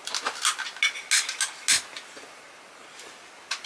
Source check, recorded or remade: recorded